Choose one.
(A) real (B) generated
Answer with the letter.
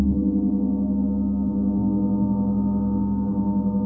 A